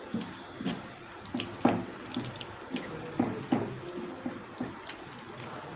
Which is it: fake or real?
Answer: real